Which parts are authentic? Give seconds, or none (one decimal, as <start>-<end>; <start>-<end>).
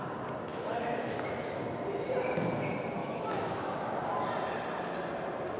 0.0-0.5; 1.6-3.0; 3.8-5.6